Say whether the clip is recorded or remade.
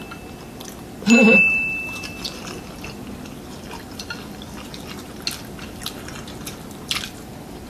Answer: recorded